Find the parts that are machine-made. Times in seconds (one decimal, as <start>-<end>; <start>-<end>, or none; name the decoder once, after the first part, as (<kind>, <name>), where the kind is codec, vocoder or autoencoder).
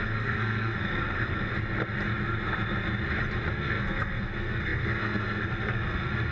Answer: 0.0-1.5 (codec, SNAC); 3.5-6.3